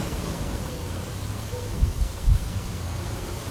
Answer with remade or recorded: remade